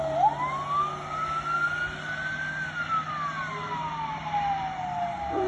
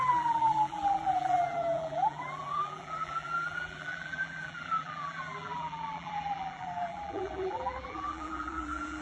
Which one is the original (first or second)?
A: first